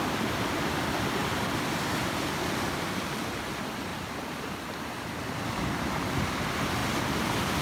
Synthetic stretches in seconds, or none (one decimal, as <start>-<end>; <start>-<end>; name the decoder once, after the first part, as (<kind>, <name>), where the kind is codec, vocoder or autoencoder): none